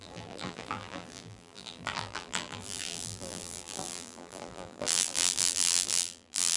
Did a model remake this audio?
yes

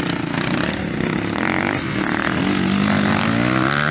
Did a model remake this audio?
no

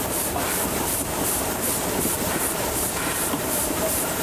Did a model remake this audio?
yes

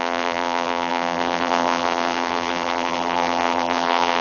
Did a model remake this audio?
yes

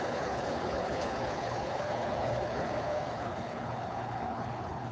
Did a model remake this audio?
yes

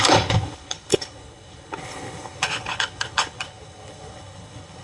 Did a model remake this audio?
yes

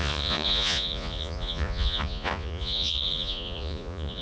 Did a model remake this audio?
yes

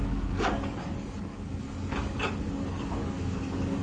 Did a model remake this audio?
yes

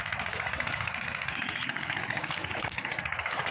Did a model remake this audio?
yes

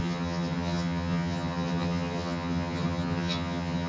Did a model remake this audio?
yes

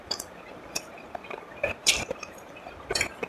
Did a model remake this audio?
yes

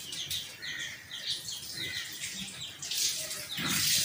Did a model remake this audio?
no